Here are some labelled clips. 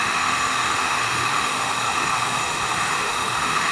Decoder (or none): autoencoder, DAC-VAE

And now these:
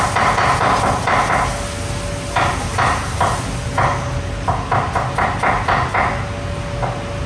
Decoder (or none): none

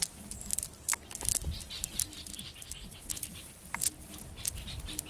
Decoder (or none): none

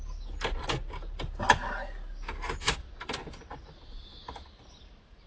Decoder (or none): none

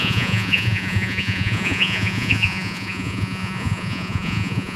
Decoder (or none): vocoder, Vocos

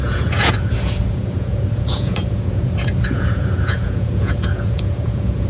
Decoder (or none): vocoder, Vocos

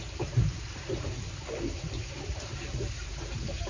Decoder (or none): vocoder, BigVGAN v2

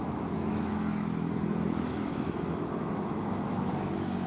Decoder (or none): autoencoder, DAC-VAE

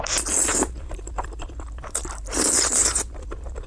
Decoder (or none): vocoder, BigVGAN v2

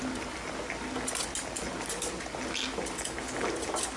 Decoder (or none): none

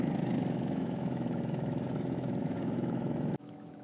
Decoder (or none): autoencoder, DAC-VAE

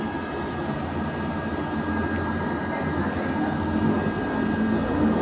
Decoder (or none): none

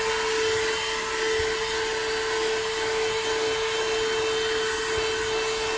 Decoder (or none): none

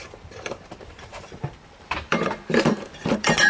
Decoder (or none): vocoder, BigVGAN v2